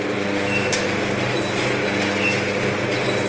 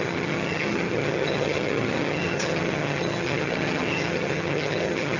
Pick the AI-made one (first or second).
second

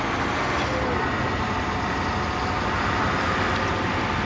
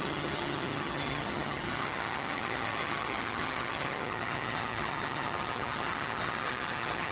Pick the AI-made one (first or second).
second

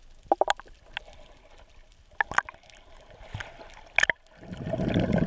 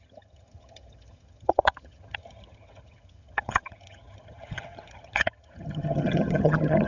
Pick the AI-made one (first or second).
second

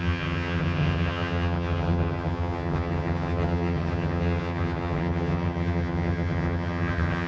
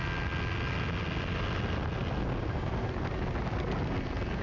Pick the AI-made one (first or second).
first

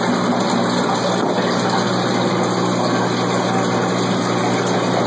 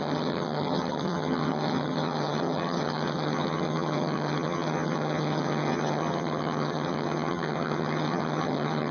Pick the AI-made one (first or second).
second